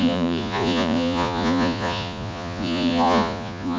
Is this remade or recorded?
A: remade